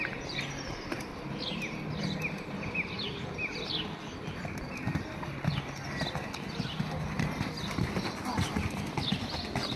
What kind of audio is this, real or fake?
real